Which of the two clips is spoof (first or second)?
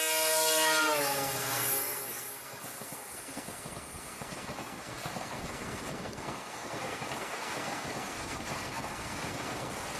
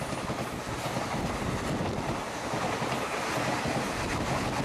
first